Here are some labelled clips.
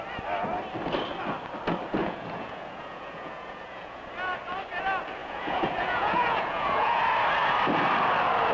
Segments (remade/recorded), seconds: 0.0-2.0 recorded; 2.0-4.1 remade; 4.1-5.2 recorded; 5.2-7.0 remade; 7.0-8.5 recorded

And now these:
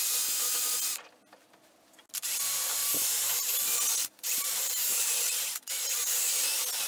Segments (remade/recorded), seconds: 0.0-2.8 recorded; 2.8-3.4 remade; 3.4-4.0 recorded; 4.0-6.4 remade; 6.4-6.9 recorded

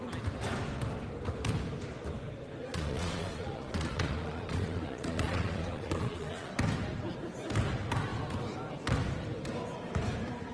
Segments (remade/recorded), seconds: 0.0-2.7 recorded; 2.7-6.5 remade; 6.5-10.5 recorded

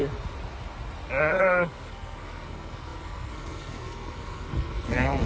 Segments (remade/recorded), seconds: 0.0-1.2 recorded; 1.2-5.3 remade

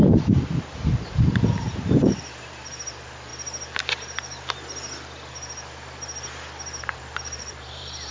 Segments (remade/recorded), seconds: 0.0-3.3 remade; 3.3-6.8 recorded; 6.8-8.1 remade

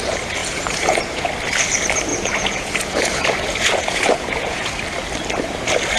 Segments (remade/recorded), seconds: 0.0-0.4 recorded; 0.4-1.3 remade; 1.3-2.1 recorded; 2.1-4.7 remade; 4.7-6.0 recorded